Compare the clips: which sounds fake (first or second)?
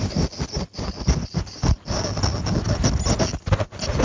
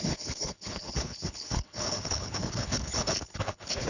second